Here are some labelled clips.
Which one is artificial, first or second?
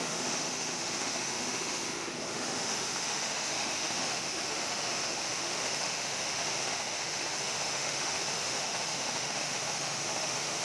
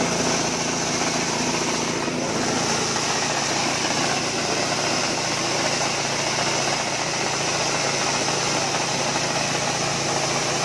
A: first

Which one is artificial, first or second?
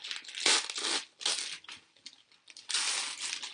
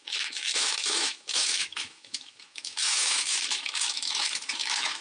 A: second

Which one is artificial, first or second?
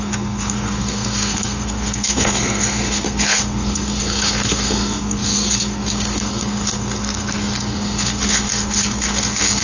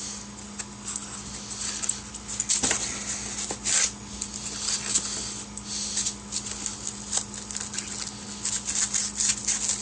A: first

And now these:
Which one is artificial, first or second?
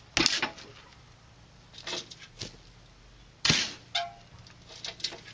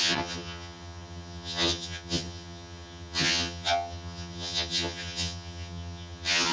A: second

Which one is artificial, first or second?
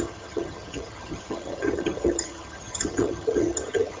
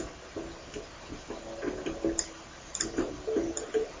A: first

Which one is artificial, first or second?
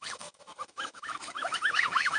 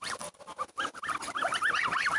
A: first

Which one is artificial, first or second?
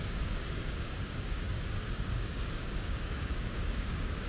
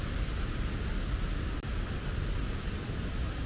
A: first